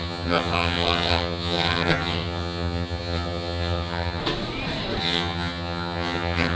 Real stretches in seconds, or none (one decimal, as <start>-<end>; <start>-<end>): 4.2-5.0